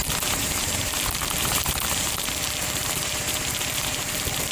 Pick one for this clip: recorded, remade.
remade